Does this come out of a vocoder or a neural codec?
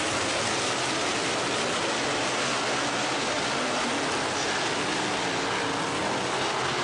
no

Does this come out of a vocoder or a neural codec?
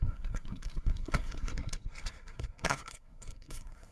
yes